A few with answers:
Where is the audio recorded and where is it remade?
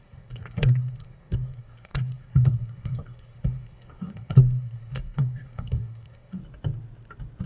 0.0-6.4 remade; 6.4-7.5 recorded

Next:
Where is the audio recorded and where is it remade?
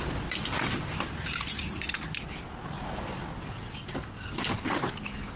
0.0-5.4 recorded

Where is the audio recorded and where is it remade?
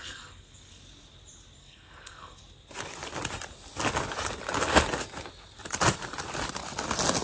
0.0-0.8 remade; 0.8-1.6 recorded; 1.6-2.4 remade; 2.4-7.2 recorded